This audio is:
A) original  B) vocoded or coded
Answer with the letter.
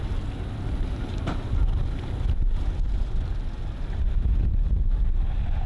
A